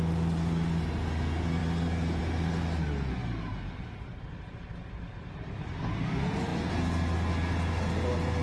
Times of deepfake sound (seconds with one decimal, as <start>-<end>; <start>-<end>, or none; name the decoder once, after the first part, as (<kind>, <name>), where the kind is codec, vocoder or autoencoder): none